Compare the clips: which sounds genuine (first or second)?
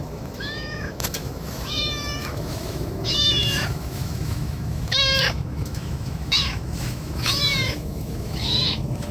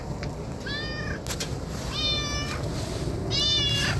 second